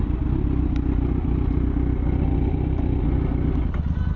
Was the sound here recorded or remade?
recorded